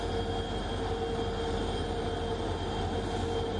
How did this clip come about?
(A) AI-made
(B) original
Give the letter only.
B